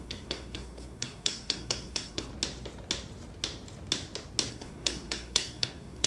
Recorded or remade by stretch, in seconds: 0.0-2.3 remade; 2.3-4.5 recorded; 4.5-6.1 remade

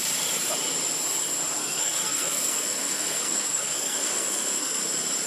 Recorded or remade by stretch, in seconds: 0.0-1.6 recorded; 1.6-4.8 remade; 4.8-5.3 recorded

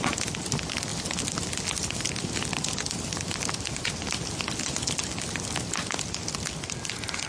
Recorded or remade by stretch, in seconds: 0.0-7.3 recorded

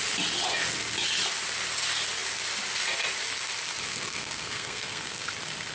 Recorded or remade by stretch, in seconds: 0.0-3.9 recorded; 3.9-5.3 remade; 5.3-5.7 recorded

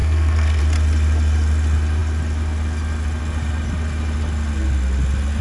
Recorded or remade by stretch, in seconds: 0.0-0.6 remade; 0.6-5.4 recorded

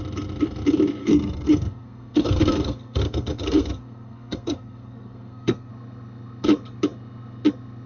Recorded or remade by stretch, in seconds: 0.0-1.0 recorded; 1.0-5.7 remade; 5.7-7.9 recorded

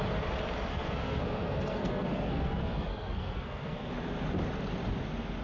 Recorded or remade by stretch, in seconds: 0.0-0.7 recorded; 0.7-3.9 remade; 3.9-5.4 recorded